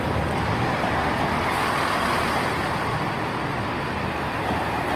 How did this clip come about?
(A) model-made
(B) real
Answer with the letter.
A